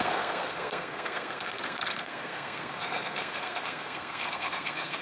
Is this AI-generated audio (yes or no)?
yes